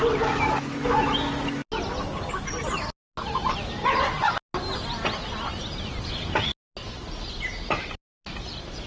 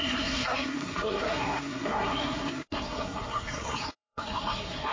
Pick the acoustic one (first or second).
first